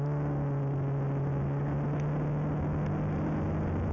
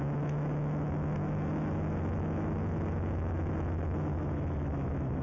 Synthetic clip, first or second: second